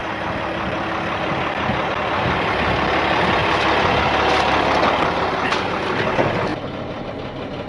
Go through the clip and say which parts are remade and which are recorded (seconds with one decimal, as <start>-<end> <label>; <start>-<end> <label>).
0.0-7.7 recorded

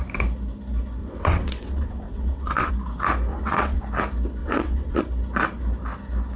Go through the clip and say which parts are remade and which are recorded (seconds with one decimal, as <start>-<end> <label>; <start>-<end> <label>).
0.0-1.0 recorded; 1.0-2.7 remade; 2.7-3.3 recorded; 3.3-3.8 remade; 3.8-4.4 recorded; 4.4-5.0 remade; 5.0-6.4 recorded

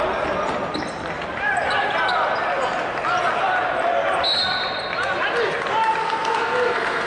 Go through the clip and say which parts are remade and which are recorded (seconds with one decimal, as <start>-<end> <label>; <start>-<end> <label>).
0.0-6.0 recorded; 6.0-7.1 remade

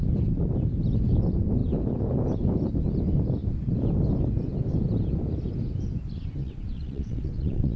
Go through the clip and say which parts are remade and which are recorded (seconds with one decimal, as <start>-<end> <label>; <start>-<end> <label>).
0.0-6.4 recorded; 6.4-7.8 remade

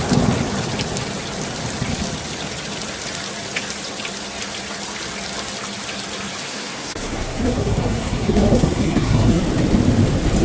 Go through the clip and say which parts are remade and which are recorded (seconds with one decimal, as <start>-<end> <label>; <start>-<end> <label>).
0.0-6.4 recorded; 6.4-9.4 remade; 9.4-10.4 recorded